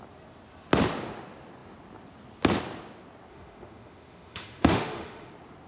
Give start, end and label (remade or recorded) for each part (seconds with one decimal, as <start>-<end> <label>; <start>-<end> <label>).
0.0-3.3 recorded; 3.3-5.3 remade; 5.3-5.7 recorded